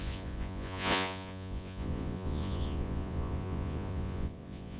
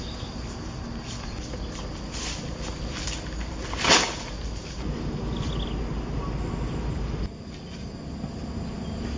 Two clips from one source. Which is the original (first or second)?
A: second